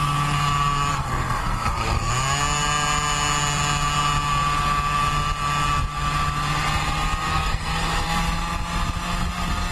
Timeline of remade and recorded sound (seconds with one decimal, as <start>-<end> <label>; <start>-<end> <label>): 0.0-0.9 recorded; 0.9-2.1 remade; 2.1-7.3 recorded; 7.3-8.2 remade; 8.2-9.7 recorded